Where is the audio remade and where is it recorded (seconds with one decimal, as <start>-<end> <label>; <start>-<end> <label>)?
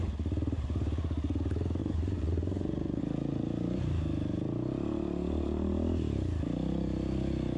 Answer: 0.0-1.8 recorded; 1.8-3.0 remade; 3.0-7.6 recorded